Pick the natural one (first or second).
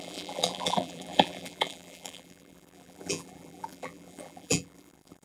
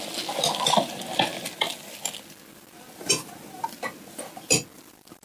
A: second